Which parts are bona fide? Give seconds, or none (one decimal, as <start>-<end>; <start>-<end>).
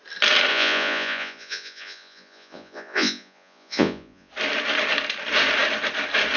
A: 0.0-0.5; 4.3-6.4